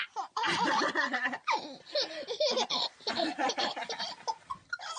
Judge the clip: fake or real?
fake